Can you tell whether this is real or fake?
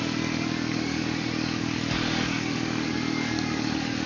fake